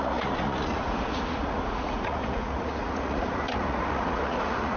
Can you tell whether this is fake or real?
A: fake